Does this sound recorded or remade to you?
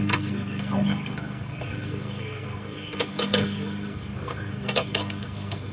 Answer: remade